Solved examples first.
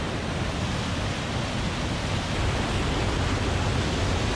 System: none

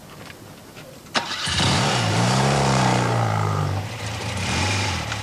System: vocoder, BigVGAN v2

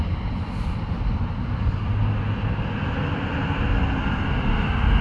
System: none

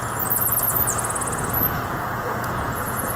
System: vocoder, Vocos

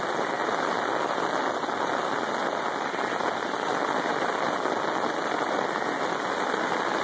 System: none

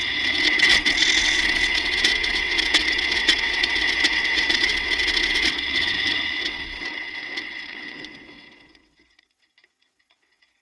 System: vocoder, WaveNeXt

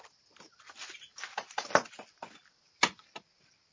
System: none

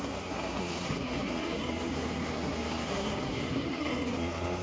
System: codec, SNAC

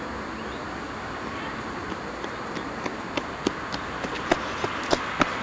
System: none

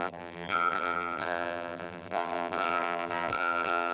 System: vocoder, BigVGAN v2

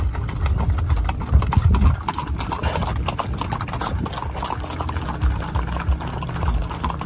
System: none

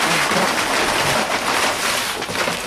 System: none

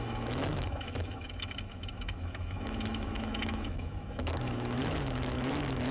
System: autoencoder, DAC-VAE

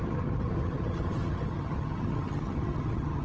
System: vocoder, HiFi-GAN